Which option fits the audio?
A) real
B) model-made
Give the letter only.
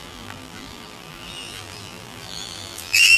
B